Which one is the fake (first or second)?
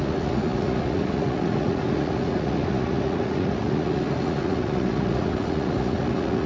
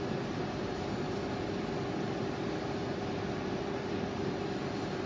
first